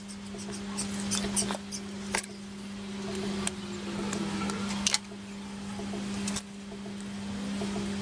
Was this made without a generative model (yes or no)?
yes